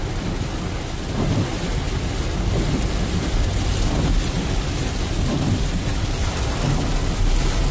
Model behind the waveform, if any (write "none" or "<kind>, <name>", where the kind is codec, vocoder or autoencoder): none